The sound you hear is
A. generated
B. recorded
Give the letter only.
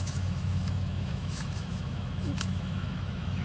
A